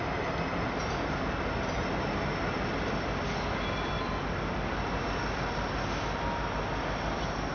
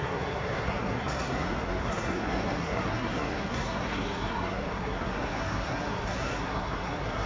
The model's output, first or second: second